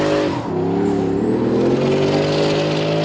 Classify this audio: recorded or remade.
recorded